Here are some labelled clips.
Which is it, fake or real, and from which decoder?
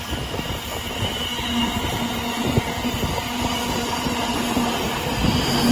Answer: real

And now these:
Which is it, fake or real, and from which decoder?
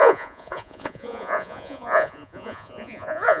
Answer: fake, vocoder, Vocos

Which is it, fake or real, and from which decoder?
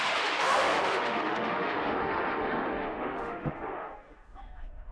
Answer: fake, autoencoder, DAC-VAE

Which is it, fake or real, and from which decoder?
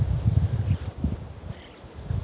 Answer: real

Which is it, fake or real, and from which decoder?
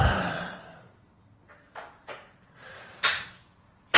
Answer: real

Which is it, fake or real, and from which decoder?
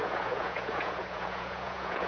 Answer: fake, vocoder, Vocos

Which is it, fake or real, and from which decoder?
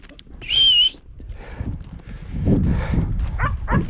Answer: real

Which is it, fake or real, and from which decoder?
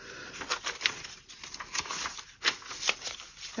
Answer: real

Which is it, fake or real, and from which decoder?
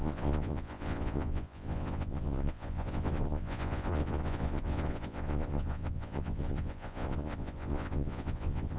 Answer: fake, vocoder, Vocos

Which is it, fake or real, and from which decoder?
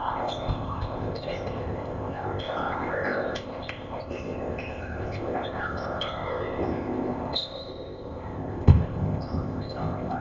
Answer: fake, codec, ZipCodec